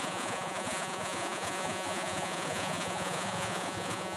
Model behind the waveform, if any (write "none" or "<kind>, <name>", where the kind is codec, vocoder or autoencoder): vocoder, Vocos